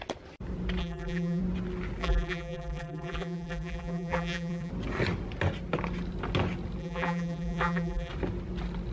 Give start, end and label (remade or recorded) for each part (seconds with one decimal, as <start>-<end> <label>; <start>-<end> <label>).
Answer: 0.0-0.8 recorded; 0.8-1.4 remade; 1.4-2.0 recorded; 2.0-4.7 remade; 4.7-6.8 recorded; 6.8-8.1 remade; 8.1-8.9 recorded

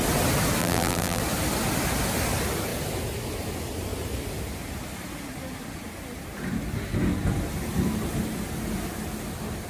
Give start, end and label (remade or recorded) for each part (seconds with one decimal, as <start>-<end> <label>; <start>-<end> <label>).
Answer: 0.0-0.6 recorded; 0.6-1.2 remade; 1.2-9.7 recorded

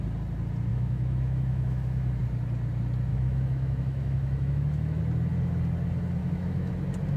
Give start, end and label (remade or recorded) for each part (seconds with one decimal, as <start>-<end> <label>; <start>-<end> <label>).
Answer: 0.0-0.7 recorded; 0.7-2.2 remade; 2.2-3.1 recorded; 3.1-5.0 remade; 5.0-6.2 recorded; 6.2-6.7 remade; 6.7-7.2 recorded

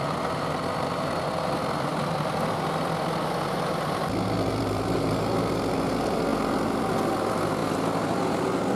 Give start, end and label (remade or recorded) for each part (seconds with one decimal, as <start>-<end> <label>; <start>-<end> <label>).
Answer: 0.0-8.8 recorded

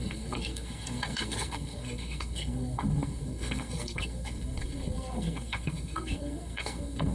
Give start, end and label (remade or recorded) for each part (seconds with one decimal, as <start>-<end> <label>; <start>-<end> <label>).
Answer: 0.0-7.1 remade

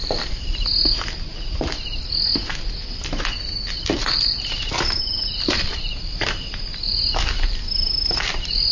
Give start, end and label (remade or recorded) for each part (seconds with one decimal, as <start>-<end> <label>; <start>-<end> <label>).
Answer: 0.0-0.7 remade; 0.7-3.9 recorded; 3.9-6.9 remade; 6.9-8.7 recorded